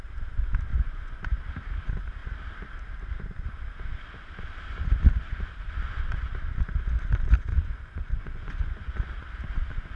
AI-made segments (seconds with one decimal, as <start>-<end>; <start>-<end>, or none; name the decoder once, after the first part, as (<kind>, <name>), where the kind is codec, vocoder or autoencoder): 0.7-1.2 (vocoder, Vocos); 7.5-8.9